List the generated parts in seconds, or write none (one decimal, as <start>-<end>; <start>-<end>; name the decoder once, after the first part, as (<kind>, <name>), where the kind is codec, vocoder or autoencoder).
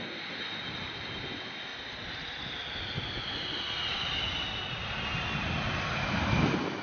none